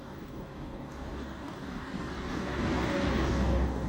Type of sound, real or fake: fake